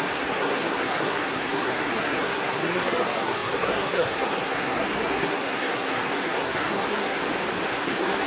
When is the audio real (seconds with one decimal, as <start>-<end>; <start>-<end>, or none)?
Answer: 7.2-7.7